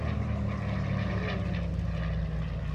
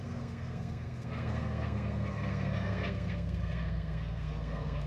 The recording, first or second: first